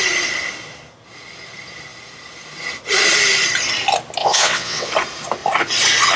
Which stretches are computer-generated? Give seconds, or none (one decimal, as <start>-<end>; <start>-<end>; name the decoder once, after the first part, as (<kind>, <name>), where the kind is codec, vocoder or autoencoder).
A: 4.2-4.9 (vocoder, WaveNeXt)